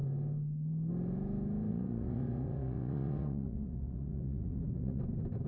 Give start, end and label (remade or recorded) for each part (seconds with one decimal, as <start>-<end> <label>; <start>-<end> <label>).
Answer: 0.0-1.7 recorded; 1.7-5.0 remade; 5.0-5.5 recorded